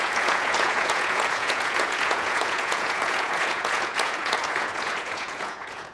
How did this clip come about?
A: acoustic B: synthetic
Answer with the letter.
B